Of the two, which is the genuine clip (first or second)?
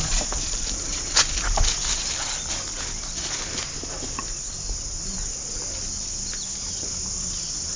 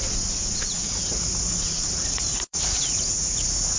first